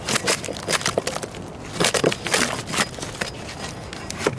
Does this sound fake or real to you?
real